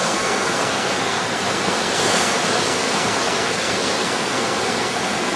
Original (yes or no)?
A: no